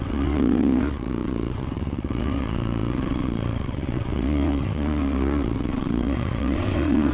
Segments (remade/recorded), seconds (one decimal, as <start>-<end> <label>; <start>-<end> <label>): 0.0-7.1 remade